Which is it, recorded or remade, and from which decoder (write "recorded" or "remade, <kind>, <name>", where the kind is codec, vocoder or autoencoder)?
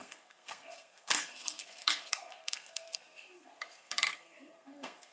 remade, codec, SNAC